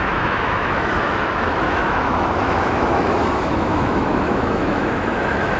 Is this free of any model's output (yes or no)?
no